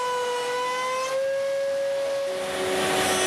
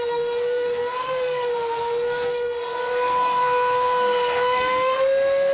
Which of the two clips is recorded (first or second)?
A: first